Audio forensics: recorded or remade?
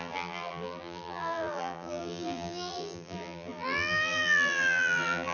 remade